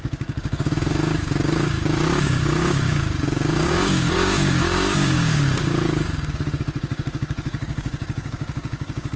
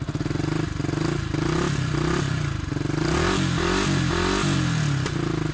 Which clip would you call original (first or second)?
second